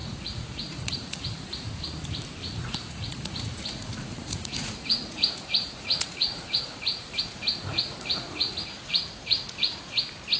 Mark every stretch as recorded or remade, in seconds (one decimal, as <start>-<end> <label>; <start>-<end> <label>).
0.0-1.5 remade; 1.5-2.4 recorded; 2.4-7.2 remade; 7.2-7.7 recorded; 7.7-10.0 remade; 10.0-10.4 recorded